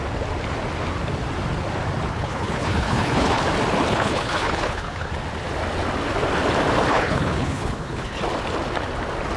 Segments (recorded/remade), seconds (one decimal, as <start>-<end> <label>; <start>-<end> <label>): 0.0-2.1 recorded; 2.1-3.4 remade; 3.4-3.9 recorded; 3.9-5.1 remade; 5.1-6.9 recorded; 6.9-8.2 remade; 8.2-9.4 recorded